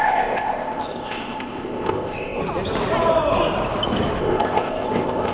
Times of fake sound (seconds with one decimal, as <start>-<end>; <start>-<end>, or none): 0.0-2.4; 4.2-5.3